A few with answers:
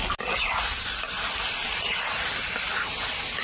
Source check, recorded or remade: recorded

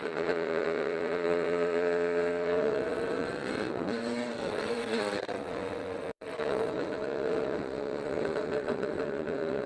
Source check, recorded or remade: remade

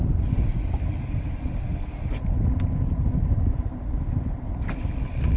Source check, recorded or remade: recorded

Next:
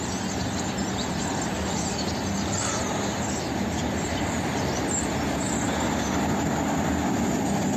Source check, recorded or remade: recorded